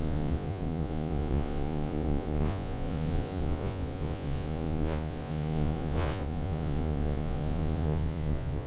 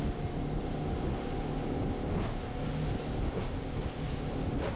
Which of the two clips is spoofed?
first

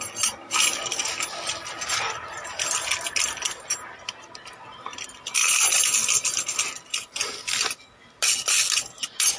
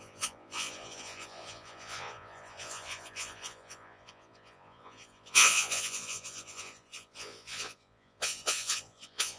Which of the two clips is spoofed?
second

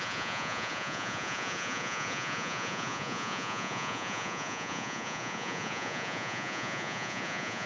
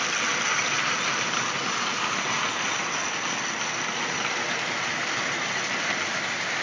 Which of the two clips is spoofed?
first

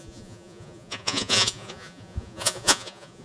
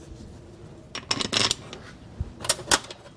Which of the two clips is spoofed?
first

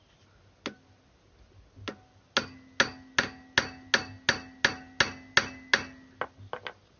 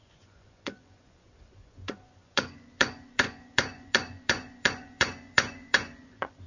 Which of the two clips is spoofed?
second